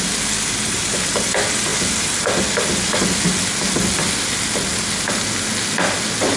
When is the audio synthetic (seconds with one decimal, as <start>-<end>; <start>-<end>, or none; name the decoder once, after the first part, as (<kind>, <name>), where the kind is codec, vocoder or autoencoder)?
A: none